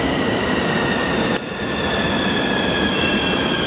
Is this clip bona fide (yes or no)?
yes